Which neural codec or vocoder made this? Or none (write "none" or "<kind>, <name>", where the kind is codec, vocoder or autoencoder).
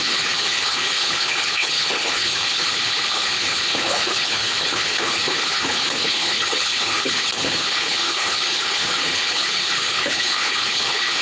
codec, HILCodec